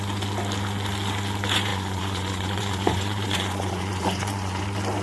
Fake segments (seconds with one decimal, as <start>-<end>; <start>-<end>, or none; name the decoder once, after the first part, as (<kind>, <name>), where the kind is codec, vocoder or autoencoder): 1.7-4.6 (vocoder, Vocos)